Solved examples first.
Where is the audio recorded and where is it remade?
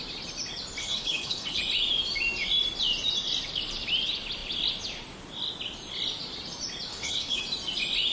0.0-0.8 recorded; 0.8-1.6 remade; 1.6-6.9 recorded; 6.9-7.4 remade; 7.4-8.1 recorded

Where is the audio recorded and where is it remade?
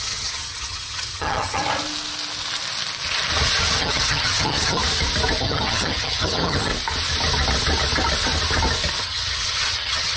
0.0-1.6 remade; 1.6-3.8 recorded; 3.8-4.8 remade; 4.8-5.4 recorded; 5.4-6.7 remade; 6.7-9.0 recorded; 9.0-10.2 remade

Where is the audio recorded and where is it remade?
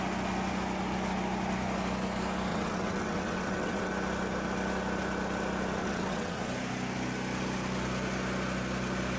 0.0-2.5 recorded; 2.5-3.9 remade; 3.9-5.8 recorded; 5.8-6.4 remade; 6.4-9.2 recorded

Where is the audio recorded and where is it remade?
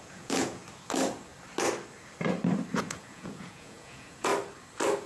0.0-0.6 remade; 0.6-2.7 recorded; 2.7-4.3 remade; 4.3-5.1 recorded